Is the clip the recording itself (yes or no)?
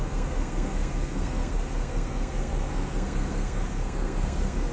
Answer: no